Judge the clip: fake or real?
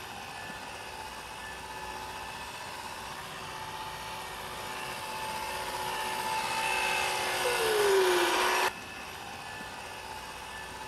real